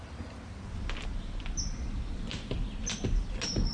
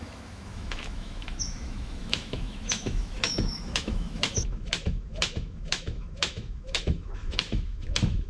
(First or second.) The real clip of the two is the first